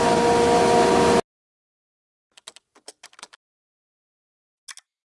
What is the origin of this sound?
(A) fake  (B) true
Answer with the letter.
B